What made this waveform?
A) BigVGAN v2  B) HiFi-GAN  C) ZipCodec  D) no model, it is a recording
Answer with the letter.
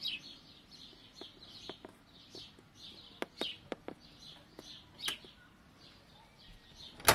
D